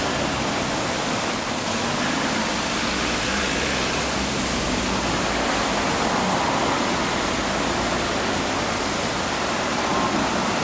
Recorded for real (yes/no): yes